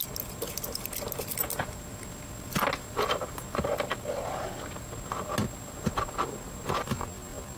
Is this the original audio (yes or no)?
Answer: yes